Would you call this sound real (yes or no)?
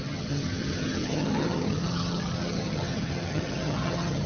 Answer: no